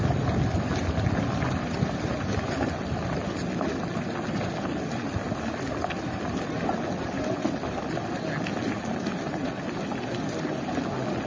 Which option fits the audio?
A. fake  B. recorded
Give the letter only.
B